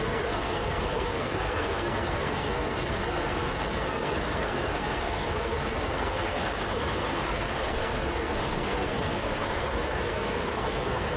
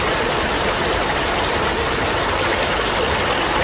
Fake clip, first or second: first